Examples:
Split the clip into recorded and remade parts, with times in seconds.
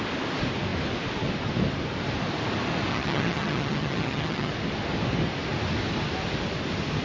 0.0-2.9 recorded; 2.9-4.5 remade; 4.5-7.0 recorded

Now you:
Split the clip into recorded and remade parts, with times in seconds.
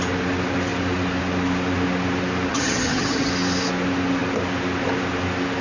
0.0-2.5 recorded; 2.5-3.3 remade; 3.3-5.6 recorded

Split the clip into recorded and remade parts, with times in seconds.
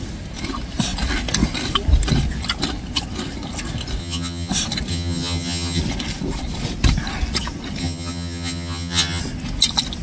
0.0-4.0 recorded; 4.0-4.5 remade; 4.5-4.9 recorded; 4.9-5.8 remade; 5.8-7.8 recorded; 7.8-9.2 remade; 9.2-10.0 recorded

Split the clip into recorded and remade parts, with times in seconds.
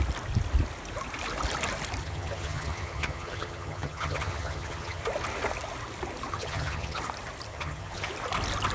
0.0-2.0 recorded; 2.0-5.0 remade; 5.0-6.3 recorded; 6.3-7.0 remade; 7.0-7.5 recorded; 7.5-8.1 remade; 8.1-8.7 recorded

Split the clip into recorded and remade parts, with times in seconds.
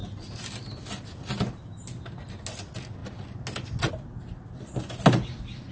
0.0-5.7 recorded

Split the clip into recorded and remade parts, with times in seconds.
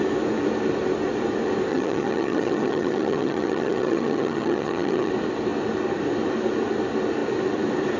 0.0-1.7 recorded; 1.7-5.1 remade; 5.1-8.0 recorded